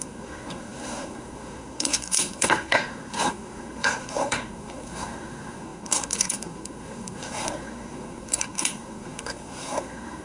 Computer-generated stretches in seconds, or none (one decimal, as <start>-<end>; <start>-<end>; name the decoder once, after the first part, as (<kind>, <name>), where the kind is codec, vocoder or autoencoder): 0.0-10.2 (codec, SNAC)

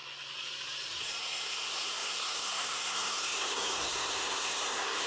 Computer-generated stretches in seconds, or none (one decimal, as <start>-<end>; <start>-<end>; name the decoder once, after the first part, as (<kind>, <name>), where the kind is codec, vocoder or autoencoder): 1.0-5.1 (codec, SNAC)

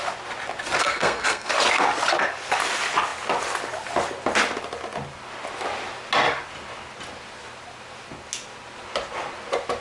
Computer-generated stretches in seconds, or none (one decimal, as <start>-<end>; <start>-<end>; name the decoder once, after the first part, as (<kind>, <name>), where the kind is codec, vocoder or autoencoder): 0.8-1.5 (codec, SNAC)

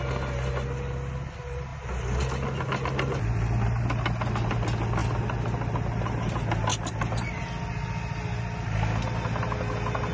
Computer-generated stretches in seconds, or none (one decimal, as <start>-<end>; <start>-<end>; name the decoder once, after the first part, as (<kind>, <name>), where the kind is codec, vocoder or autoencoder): 1.7-2.2 (vocoder, BigVGAN v2); 6.7-7.4

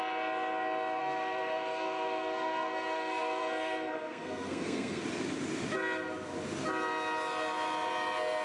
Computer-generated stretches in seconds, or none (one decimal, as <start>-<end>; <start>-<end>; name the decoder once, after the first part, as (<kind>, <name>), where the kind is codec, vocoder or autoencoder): 1.0-5.0 (codec, SNAC)

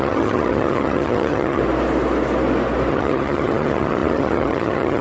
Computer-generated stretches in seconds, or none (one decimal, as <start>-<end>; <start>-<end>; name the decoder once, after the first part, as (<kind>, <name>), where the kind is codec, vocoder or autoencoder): 0.0-1.6 (vocoder, HiFi-GAN); 2.9-5.0

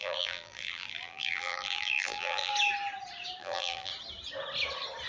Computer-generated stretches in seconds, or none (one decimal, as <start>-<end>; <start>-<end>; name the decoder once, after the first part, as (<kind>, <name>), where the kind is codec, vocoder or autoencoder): 0.0-2.5 (vocoder, BigVGAN v2); 3.4-3.9